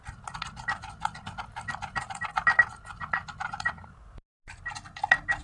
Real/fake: real